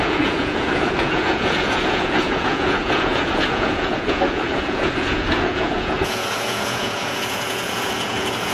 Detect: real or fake fake